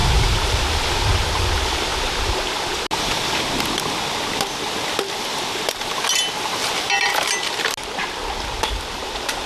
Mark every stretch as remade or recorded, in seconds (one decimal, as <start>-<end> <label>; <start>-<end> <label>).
0.0-0.6 remade; 0.6-6.6 recorded; 6.6-7.3 remade; 7.3-9.5 recorded